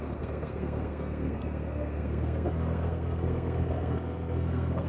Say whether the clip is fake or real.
fake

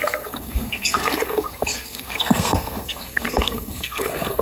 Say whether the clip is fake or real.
fake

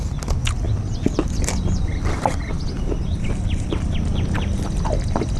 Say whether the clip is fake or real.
real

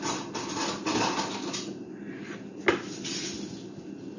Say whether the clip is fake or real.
real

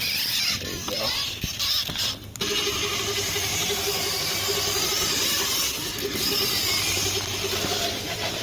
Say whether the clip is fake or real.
real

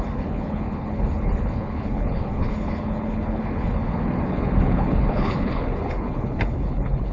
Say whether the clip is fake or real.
fake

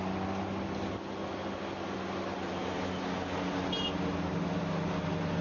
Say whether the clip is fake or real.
real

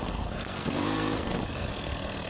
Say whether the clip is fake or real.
fake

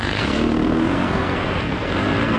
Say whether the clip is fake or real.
fake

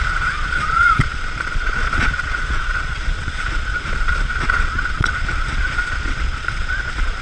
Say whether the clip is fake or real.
fake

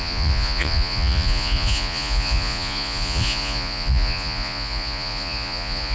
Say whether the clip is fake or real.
fake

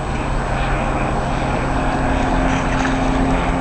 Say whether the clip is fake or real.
real